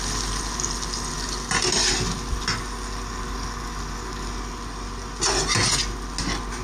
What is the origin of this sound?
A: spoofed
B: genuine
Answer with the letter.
B